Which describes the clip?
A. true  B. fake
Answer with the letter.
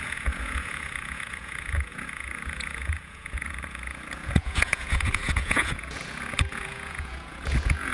B